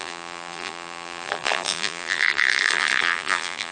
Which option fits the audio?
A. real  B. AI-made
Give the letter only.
B